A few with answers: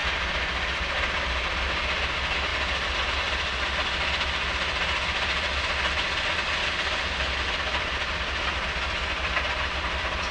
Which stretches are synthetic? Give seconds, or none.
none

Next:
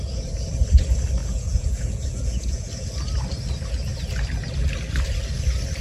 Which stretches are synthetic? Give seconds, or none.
1.2-2.7

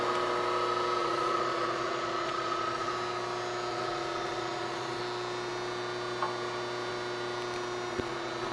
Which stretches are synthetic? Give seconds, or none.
1.0-2.9; 3.7-5.0; 7.9-8.5

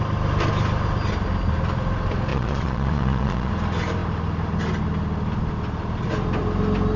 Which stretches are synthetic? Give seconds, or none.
2.3-3.5